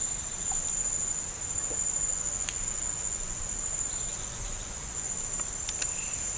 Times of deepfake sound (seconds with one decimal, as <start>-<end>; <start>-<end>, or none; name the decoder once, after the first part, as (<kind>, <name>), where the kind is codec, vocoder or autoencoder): 2.1-3.4 (vocoder, Vocos); 4.1-5.1